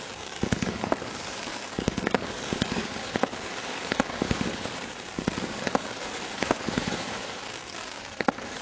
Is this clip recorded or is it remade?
remade